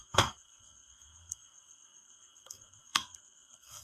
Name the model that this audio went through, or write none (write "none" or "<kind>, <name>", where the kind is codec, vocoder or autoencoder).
codec, SNAC